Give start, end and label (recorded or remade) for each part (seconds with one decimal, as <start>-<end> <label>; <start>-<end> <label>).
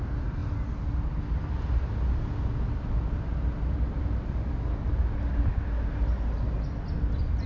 0.0-7.5 recorded